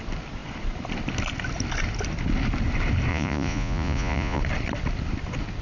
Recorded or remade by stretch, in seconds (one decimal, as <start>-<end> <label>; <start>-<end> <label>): 0.0-3.1 recorded; 3.1-4.4 remade; 4.4-5.6 recorded